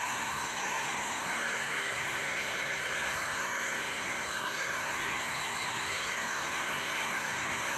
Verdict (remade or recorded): remade